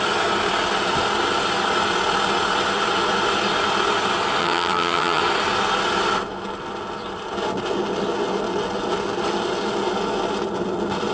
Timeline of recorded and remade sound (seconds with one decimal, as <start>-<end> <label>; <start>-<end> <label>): 0.0-4.4 recorded; 4.4-5.2 remade; 5.2-11.1 recorded